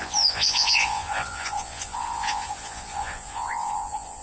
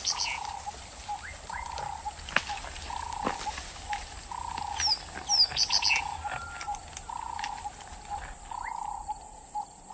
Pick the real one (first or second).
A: second